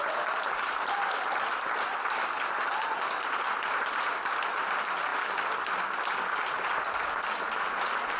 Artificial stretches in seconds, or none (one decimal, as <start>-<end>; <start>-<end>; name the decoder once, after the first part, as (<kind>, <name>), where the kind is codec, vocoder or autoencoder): none